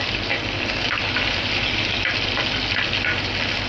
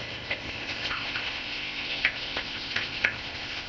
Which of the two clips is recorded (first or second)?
first